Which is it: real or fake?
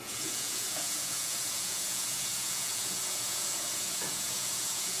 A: fake